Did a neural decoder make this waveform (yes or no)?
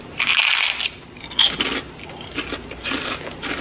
no